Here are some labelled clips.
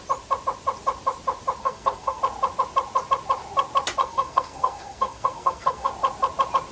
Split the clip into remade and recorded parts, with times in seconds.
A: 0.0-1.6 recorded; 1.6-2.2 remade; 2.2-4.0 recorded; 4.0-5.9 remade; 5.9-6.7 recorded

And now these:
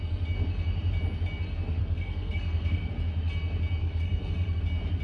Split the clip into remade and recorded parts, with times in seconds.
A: 0.0-1.8 recorded; 1.8-2.9 remade; 2.9-3.8 recorded; 3.8-4.6 remade; 4.6-5.0 recorded

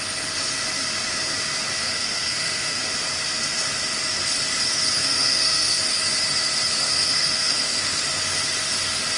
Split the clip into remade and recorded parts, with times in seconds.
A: 0.0-1.8 recorded; 1.8-2.8 remade; 2.8-5.0 recorded; 5.0-5.8 remade; 5.8-6.9 recorded; 6.9-8.0 remade; 8.0-9.2 recorded

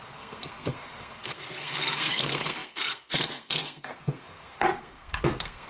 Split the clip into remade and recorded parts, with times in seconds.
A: 0.0-5.7 remade